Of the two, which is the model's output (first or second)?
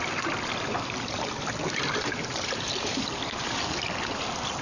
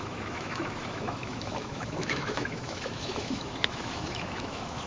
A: second